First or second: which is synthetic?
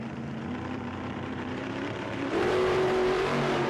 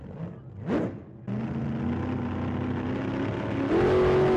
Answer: first